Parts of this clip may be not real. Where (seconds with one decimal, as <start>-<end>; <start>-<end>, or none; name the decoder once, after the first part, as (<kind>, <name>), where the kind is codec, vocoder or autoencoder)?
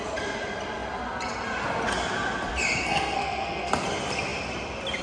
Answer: 2.8-3.7 (codec, SNAC)